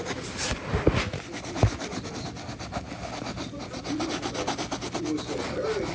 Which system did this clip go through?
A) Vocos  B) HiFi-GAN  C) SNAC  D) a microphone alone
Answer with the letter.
D